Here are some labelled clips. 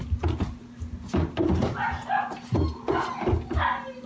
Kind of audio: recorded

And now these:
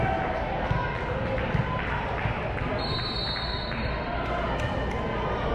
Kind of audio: recorded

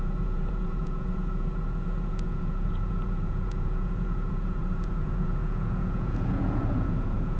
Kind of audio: remade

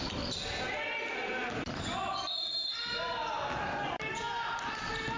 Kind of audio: recorded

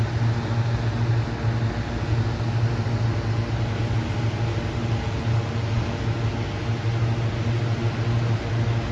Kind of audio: recorded